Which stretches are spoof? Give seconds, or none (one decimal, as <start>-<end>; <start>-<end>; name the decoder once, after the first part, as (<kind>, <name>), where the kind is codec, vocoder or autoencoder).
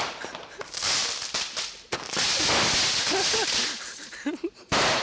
none